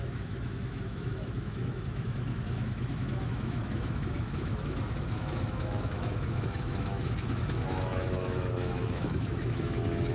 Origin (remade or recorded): remade